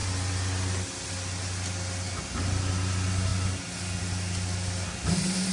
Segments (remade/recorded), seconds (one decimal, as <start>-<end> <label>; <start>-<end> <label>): 0.0-5.5 recorded